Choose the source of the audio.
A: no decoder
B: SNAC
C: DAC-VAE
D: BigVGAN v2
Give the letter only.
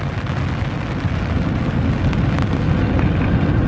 A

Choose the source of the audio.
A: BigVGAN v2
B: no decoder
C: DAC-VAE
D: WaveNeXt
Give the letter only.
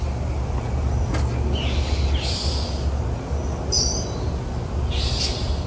B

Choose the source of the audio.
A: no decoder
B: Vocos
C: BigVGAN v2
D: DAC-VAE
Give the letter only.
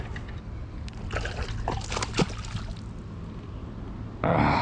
A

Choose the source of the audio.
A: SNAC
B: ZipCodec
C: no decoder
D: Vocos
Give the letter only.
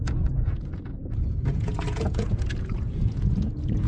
D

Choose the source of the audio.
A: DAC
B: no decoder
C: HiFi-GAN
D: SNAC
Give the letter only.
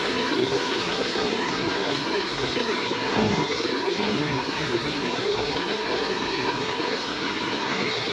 D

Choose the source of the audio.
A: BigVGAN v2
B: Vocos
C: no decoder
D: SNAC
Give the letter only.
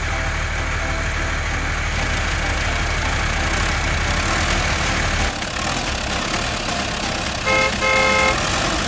C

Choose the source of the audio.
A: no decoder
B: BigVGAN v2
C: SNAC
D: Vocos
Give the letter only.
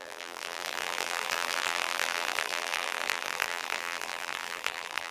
B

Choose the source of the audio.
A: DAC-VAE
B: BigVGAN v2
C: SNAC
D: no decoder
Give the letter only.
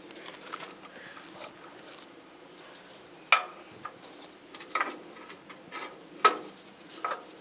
D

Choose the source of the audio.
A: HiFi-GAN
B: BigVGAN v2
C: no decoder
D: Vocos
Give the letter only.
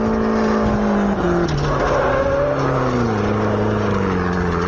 C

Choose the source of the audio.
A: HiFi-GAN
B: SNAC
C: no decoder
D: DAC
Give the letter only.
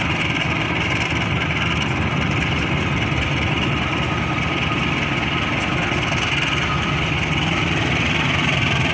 C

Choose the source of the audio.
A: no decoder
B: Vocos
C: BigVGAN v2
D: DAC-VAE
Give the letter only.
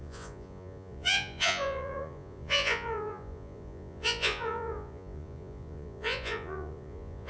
B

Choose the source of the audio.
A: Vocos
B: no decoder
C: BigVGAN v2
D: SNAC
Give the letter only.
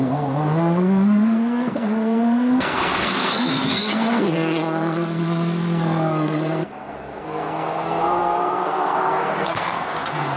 D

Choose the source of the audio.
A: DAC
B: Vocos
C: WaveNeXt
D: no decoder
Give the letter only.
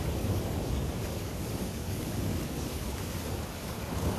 A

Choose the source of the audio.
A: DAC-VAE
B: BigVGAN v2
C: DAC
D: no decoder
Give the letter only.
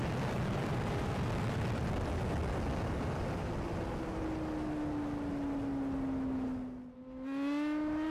D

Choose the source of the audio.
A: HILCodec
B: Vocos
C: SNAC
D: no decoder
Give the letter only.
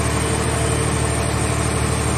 D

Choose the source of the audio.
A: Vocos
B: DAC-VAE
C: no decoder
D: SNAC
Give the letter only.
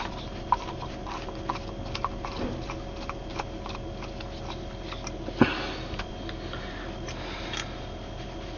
C